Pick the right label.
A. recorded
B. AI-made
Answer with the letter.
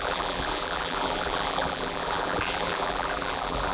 B